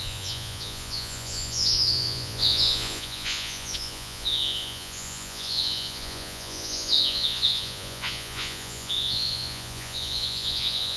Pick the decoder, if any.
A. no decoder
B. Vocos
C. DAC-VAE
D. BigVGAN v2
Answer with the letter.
B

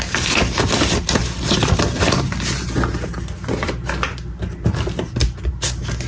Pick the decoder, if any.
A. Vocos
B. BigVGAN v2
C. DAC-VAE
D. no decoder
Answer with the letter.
D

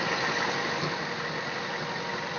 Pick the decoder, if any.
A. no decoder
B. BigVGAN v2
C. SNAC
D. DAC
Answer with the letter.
A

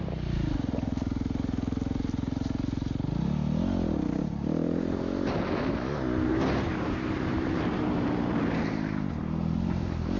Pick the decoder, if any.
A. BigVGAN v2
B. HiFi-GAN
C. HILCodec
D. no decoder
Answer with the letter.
D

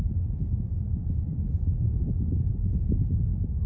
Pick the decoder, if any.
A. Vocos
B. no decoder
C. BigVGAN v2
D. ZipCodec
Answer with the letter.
B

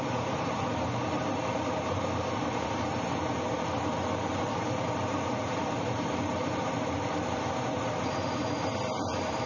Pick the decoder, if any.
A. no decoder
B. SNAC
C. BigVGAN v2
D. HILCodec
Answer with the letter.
C